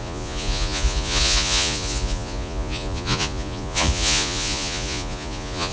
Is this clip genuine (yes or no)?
no